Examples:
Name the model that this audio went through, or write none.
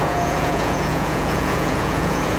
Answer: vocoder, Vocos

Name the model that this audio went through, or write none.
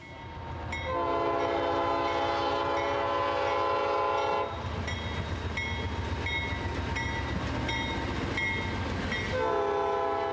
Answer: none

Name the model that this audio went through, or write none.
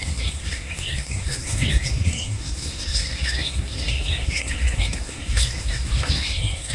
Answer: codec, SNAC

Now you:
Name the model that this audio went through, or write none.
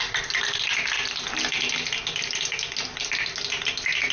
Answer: none